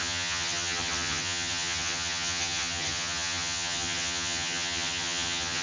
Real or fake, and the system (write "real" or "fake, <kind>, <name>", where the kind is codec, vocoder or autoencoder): fake, vocoder, HiFi-GAN